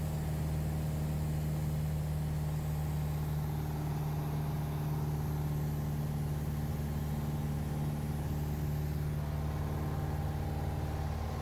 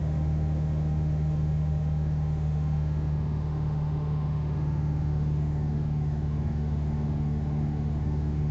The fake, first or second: second